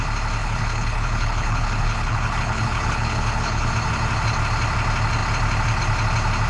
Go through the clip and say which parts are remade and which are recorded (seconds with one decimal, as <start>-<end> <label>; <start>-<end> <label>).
0.0-0.4 recorded; 0.4-3.7 remade; 3.7-6.5 recorded